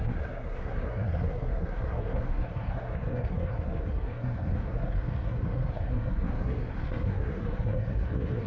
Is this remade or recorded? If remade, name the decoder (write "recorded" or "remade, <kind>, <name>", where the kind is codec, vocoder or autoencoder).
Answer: remade, codec, SNAC